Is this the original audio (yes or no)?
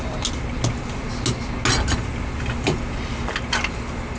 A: yes